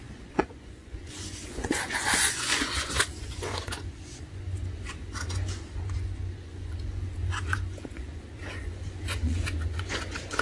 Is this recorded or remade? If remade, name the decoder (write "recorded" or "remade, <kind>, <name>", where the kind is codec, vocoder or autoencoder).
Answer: remade, vocoder, Vocos